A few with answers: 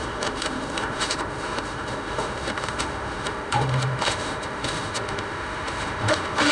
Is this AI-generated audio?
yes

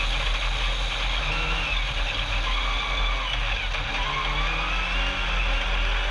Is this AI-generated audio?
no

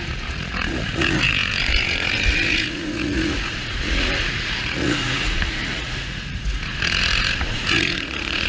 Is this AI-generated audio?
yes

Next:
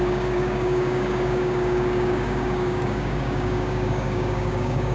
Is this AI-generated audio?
yes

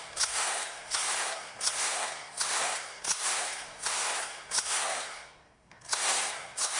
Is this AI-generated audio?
yes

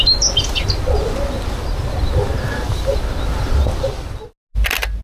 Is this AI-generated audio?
no